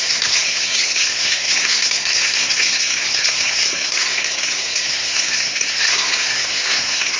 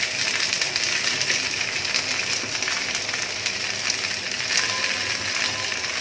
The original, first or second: second